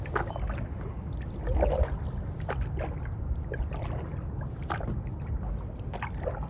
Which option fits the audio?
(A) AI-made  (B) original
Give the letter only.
B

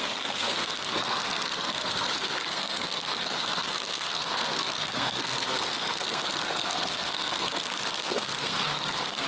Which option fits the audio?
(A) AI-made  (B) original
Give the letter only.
A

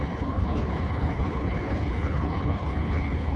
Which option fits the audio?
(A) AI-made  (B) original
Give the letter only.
A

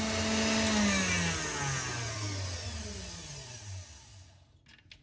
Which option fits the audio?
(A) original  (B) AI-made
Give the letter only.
A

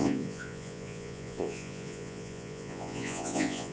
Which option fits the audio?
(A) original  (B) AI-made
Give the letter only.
B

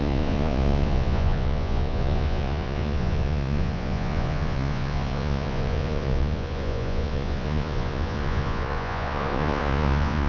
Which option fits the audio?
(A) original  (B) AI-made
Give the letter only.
B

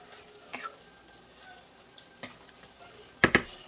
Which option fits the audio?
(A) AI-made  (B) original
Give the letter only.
B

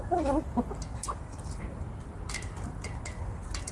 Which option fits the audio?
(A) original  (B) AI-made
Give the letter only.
A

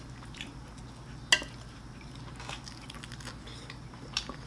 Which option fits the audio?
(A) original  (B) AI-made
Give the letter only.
A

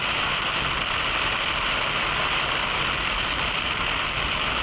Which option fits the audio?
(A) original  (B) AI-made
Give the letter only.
A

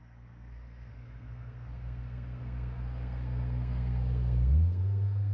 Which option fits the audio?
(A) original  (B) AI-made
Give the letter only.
B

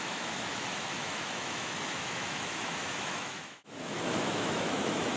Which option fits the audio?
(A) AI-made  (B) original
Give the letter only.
A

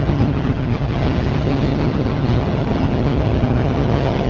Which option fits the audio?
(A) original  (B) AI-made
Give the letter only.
B